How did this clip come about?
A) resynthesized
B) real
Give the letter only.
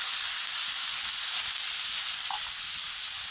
B